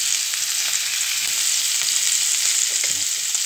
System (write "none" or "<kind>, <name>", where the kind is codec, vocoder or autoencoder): none